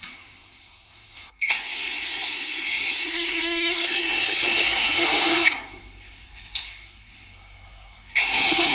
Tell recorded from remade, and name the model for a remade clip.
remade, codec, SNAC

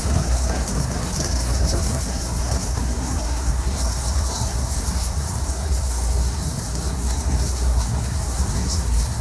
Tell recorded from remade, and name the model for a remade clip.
remade, codec, SNAC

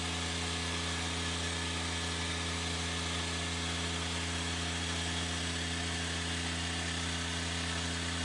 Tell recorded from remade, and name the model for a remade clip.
recorded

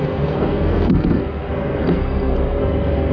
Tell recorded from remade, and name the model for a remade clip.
remade, codec, SNAC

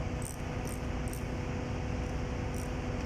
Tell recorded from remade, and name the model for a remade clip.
recorded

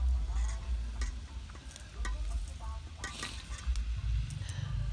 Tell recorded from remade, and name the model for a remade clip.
recorded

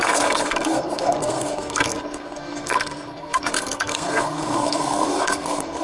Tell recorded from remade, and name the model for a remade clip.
remade, codec, SNAC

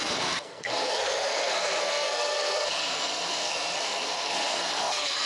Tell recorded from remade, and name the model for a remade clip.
remade, codec, SNAC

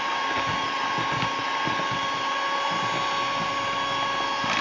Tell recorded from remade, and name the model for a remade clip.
recorded